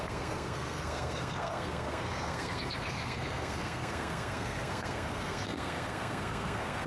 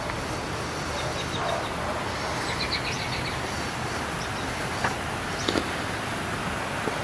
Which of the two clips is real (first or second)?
second